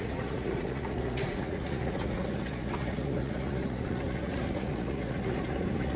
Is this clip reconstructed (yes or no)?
yes